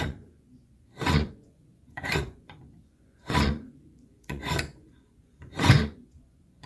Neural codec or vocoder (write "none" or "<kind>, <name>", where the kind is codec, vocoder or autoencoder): vocoder, Vocos